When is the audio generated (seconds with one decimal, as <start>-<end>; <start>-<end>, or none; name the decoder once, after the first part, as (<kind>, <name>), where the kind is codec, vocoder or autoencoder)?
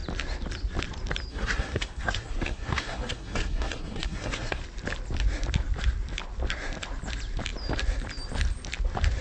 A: 1.3-4.6 (codec, SNAC)